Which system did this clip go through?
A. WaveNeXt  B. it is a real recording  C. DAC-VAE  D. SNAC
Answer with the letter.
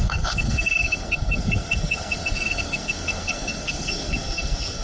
D